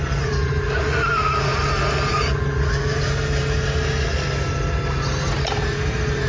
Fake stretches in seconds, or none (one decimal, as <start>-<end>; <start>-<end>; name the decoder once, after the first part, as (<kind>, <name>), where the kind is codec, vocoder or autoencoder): none